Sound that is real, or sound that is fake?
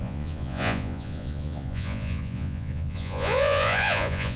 fake